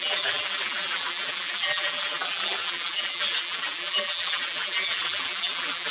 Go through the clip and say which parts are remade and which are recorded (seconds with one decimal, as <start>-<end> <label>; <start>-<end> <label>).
0.0-5.9 remade